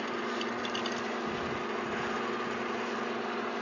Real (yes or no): yes